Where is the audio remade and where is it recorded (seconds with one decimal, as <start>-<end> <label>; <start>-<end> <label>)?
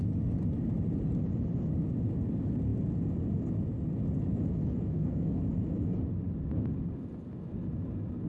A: 0.0-4.9 recorded; 4.9-5.4 remade; 5.4-8.3 recorded